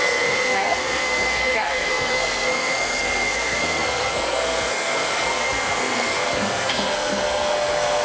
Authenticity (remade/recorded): remade